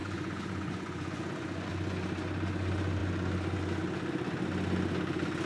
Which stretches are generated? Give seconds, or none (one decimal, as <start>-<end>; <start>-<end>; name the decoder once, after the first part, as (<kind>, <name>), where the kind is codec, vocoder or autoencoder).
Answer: 0.0-1.7 (vocoder, Vocos)